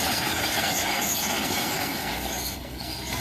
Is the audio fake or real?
fake